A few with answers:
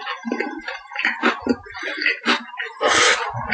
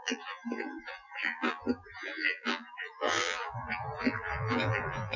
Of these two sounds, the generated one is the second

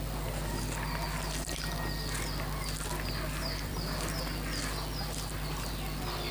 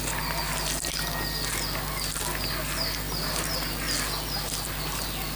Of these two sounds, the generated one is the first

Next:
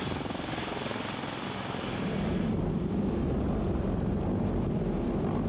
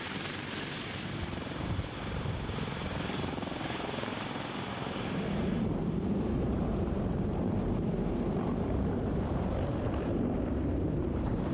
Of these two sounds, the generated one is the second